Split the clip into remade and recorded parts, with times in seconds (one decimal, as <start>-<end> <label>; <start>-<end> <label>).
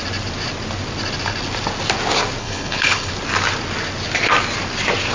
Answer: 0.0-2.4 recorded; 2.4-3.1 remade; 3.1-5.1 recorded